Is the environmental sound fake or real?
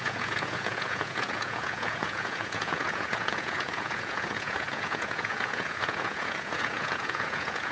fake